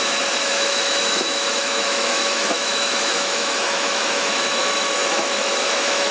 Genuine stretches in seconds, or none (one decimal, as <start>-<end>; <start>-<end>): none